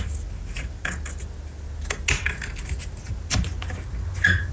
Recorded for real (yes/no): yes